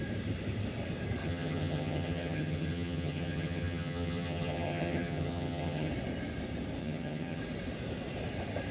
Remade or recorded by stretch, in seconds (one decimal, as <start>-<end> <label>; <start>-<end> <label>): 0.0-1.2 recorded; 1.2-5.9 remade; 5.9-6.8 recorded; 6.8-7.4 remade; 7.4-8.7 recorded